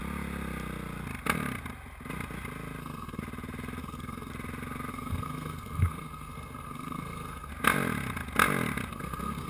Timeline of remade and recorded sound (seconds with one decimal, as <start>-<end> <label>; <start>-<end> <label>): 0.0-2.8 recorded; 2.8-3.2 remade; 3.2-3.8 recorded; 3.8-4.3 remade; 4.3-4.9 recorded; 4.9-7.5 remade; 7.5-8.9 recorded; 8.9-9.5 remade